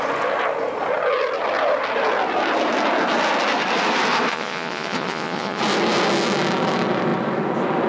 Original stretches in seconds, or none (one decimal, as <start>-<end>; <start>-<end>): 0.0-4.3; 5.6-7.9